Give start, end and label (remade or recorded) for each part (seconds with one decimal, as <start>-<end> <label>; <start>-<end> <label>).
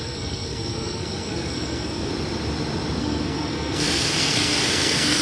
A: 0.0-2.1 remade; 2.1-3.0 recorded; 3.0-5.2 remade